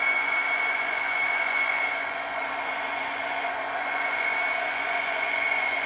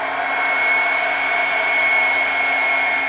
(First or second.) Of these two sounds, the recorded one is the second